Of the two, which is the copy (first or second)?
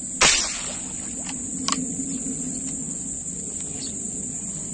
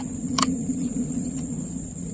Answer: second